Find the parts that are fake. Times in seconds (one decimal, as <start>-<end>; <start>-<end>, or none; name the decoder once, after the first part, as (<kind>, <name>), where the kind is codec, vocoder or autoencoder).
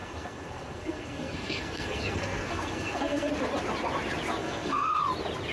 0.0-3.3 (codec, SNAC); 4.4-5.0